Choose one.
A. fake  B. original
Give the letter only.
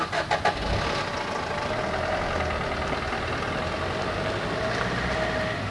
B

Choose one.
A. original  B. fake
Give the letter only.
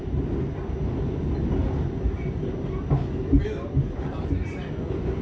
A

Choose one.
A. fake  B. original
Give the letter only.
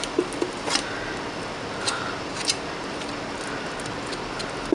B